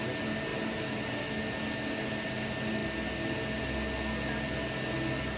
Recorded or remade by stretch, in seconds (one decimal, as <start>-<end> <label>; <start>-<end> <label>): 0.0-0.5 recorded; 0.5-1.2 remade; 1.2-5.4 recorded

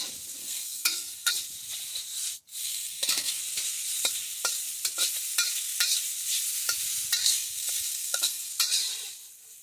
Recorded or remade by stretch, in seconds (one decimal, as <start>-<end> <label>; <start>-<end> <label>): 0.0-0.4 recorded; 0.4-1.3 remade; 1.3-2.6 recorded; 2.6-3.4 remade; 3.4-7.2 recorded; 7.2-8.5 remade; 8.5-9.6 recorded

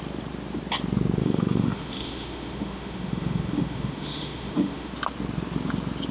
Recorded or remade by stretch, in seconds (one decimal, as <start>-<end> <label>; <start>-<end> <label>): 0.0-1.2 recorded; 1.2-4.9 remade; 4.9-6.1 recorded

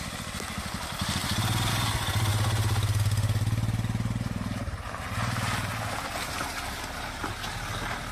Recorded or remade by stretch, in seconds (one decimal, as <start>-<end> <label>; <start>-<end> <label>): 0.0-8.1 recorded

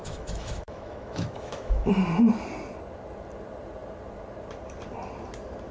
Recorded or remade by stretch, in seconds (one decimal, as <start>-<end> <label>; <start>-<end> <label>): 0.0-1.9 remade; 1.9-5.7 recorded